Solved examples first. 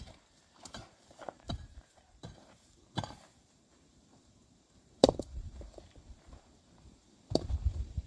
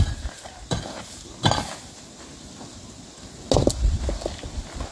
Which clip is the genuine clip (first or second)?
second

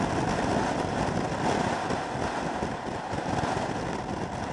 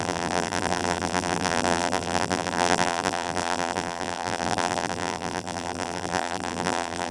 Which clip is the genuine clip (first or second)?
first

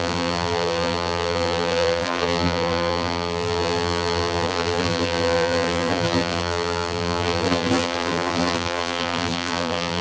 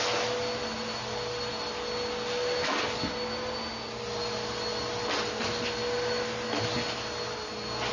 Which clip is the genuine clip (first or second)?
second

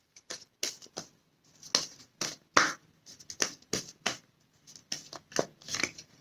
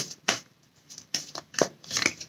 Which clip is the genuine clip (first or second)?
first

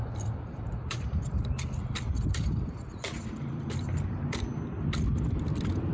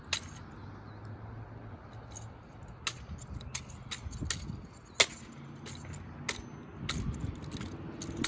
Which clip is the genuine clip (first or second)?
second